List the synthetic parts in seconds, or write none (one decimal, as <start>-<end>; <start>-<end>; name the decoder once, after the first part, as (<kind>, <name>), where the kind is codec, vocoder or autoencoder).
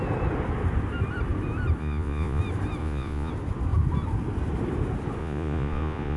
1.8-2.4 (vocoder, Vocos); 2.8-3.3; 5.2-6.2